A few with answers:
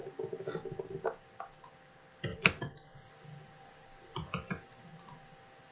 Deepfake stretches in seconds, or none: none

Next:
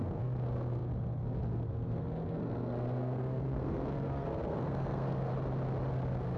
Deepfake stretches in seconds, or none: 0.0-5.3 (codec, SNAC); 5.9-6.4